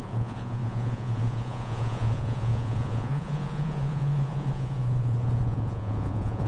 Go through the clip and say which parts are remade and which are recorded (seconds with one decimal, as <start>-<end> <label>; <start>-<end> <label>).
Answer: 0.0-6.5 remade